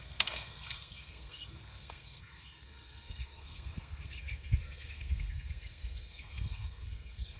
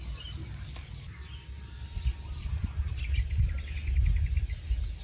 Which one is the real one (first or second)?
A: second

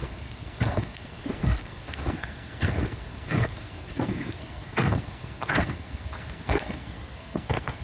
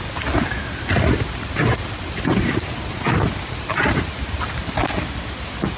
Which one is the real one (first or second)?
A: second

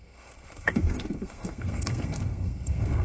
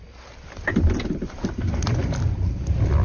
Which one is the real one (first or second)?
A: second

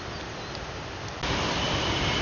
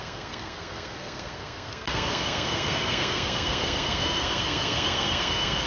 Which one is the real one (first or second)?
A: first